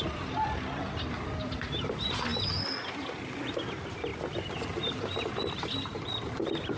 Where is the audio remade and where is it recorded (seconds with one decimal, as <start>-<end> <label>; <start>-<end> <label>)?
0.0-6.8 recorded

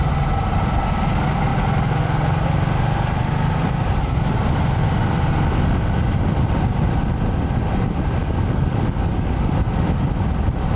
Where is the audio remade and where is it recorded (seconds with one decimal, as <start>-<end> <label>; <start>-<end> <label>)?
0.0-8.2 recorded; 8.2-9.5 remade; 9.5-10.8 recorded

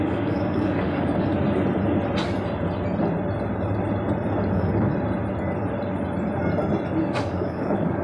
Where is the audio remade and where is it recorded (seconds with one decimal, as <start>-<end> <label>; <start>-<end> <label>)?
0.0-1.3 remade; 1.3-4.5 recorded; 4.5-4.9 remade; 4.9-7.0 recorded; 7.0-8.0 remade

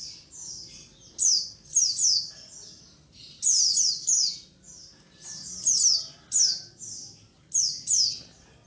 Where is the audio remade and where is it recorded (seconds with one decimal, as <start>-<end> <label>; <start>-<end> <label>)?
0.0-8.7 recorded

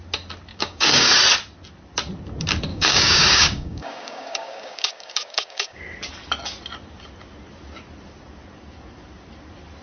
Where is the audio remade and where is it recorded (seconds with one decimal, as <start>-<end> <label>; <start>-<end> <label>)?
0.0-0.5 recorded; 0.5-1.2 remade; 1.2-2.7 recorded; 2.7-5.8 remade; 5.8-9.8 recorded

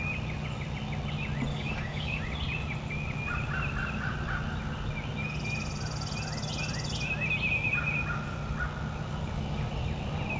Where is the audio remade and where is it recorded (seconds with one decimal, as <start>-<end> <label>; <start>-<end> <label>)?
0.0-1.5 recorded; 1.5-2.2 remade; 2.2-10.4 recorded

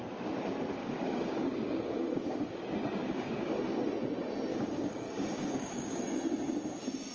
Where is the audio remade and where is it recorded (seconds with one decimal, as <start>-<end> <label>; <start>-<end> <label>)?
0.0-0.8 recorded; 0.8-2.6 remade; 2.6-3.0 recorded; 3.0-3.6 remade; 3.6-4.5 recorded; 4.5-6.0 remade; 6.0-7.1 recorded